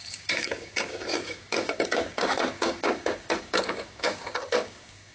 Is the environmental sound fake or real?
fake